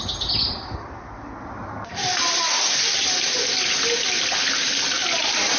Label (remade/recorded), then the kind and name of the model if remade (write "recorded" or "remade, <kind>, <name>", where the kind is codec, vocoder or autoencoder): recorded